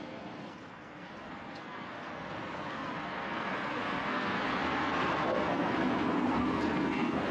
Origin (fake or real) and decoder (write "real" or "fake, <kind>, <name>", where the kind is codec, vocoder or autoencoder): fake, codec, SNAC